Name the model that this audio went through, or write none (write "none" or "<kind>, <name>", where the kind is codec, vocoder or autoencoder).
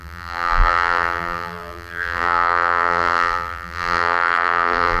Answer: vocoder, BigVGAN v2